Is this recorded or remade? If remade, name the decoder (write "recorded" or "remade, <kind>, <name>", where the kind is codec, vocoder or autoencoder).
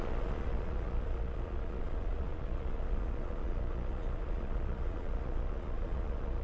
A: remade, vocoder, Vocos